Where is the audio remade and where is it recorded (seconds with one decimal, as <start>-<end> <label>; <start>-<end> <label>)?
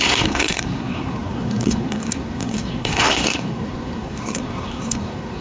0.0-5.4 remade